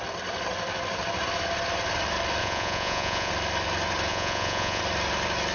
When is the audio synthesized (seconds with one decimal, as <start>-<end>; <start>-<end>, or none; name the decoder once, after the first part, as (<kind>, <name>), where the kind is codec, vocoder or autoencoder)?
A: 2.4-3.3 (vocoder, Vocos); 4.1-4.8